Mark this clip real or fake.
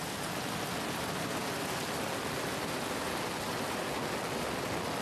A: real